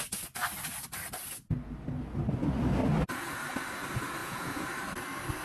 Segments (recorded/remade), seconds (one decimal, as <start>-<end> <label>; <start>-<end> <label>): 0.0-4.2 recorded; 4.2-4.7 remade; 4.7-5.4 recorded